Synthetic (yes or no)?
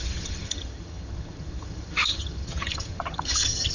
yes